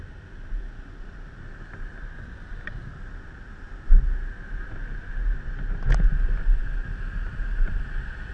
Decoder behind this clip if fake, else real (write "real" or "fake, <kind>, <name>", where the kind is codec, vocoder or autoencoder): real